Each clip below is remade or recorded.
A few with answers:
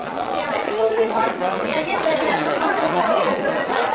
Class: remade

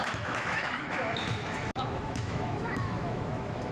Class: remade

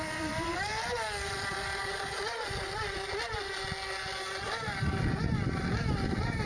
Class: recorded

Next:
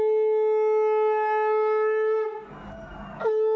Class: recorded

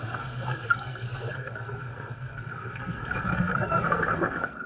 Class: remade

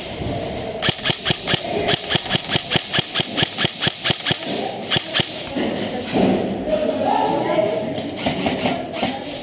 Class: recorded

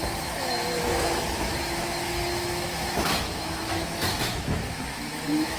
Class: remade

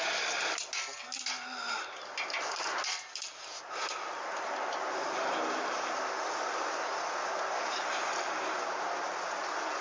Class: recorded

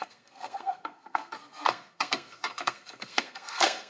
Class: remade